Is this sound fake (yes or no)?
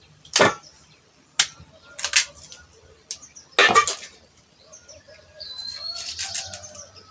no